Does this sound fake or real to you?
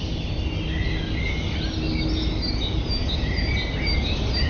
real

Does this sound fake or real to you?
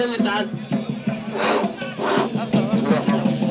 real